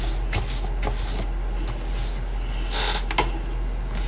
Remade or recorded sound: recorded